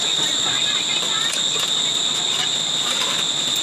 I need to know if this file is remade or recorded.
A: recorded